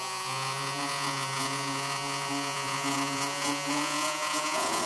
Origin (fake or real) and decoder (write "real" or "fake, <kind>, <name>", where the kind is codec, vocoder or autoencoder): fake, vocoder, Vocos